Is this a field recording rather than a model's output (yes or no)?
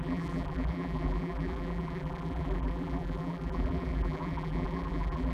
no